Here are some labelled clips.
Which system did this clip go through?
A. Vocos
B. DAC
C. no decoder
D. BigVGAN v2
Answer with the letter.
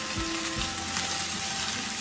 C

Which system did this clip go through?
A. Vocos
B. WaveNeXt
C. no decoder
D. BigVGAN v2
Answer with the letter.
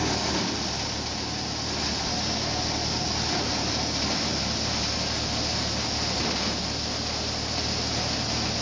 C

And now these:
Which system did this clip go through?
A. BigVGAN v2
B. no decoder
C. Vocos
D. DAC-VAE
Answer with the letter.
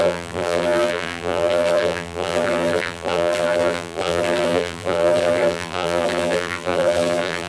A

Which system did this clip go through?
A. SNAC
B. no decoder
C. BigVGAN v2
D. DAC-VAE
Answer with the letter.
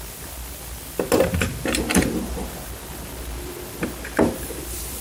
C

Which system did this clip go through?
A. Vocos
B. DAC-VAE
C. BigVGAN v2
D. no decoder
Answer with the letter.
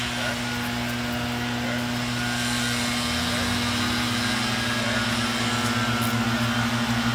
D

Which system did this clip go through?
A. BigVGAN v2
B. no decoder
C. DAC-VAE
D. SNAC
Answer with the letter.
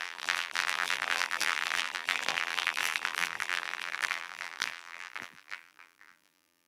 A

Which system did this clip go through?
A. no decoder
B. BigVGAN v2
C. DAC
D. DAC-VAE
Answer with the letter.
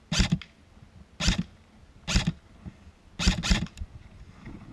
A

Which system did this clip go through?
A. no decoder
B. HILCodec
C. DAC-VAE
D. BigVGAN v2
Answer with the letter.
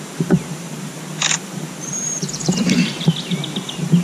D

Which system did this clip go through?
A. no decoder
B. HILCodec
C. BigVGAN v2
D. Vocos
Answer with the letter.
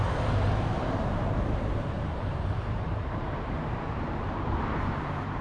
C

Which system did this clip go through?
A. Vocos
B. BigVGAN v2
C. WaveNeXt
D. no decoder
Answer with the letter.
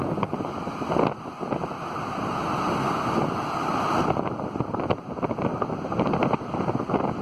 D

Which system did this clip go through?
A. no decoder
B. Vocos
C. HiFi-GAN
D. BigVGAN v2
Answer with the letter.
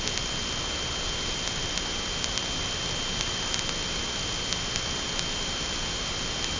A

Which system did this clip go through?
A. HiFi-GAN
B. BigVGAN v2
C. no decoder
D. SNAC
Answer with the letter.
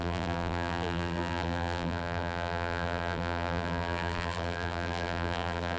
B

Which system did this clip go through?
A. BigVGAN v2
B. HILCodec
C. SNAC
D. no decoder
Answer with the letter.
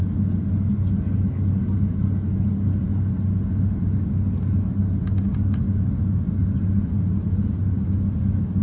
D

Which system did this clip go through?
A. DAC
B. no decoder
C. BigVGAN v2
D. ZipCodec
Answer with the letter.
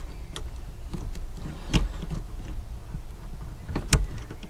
B